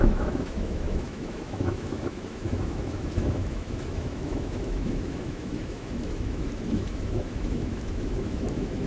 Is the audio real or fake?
fake